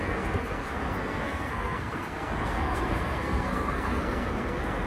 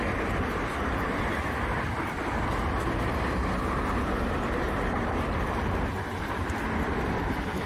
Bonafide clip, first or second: second